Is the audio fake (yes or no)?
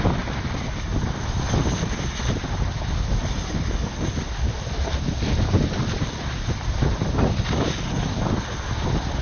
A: no